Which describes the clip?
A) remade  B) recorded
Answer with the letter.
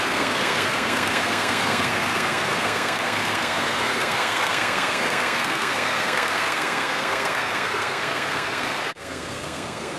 A